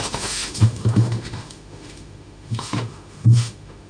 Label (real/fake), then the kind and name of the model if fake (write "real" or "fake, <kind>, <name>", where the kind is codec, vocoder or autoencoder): fake, autoencoder, DAC-VAE